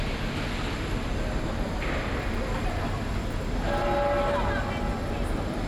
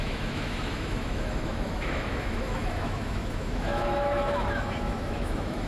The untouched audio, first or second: first